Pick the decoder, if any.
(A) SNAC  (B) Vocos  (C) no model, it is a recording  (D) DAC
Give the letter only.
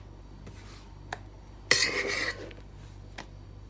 C